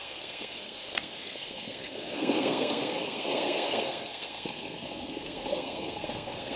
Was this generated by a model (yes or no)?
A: yes